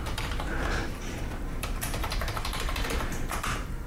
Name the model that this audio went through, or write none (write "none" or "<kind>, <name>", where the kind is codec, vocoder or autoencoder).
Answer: vocoder, BigVGAN v2